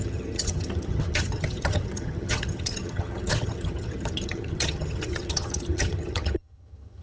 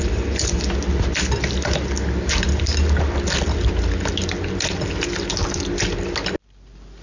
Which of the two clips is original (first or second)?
second